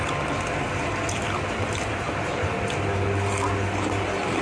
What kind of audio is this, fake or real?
real